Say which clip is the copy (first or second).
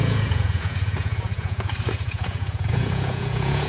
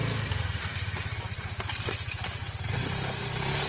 first